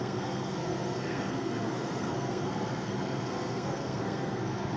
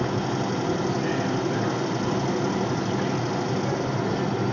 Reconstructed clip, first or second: first